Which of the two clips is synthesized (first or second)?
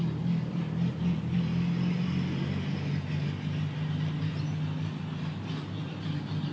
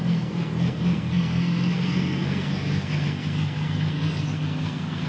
second